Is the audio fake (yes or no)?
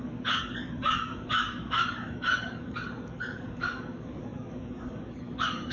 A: yes